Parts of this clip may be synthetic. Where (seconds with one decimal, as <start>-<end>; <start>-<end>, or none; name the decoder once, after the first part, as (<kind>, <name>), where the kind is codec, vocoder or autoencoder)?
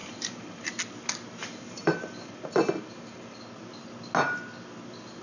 0.0-0.7 (vocoder, BigVGAN v2); 1.4-3.4